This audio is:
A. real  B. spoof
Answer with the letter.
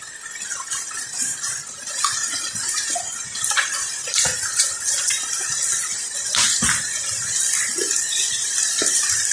A